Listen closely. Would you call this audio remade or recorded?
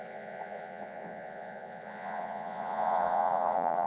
remade